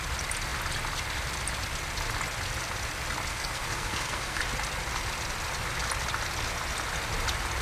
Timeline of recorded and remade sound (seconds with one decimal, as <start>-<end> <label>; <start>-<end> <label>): 0.0-3.3 recorded; 3.3-4.4 remade; 4.4-7.6 recorded